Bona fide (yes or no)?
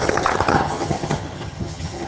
no